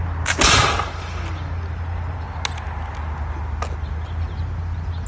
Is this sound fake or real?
real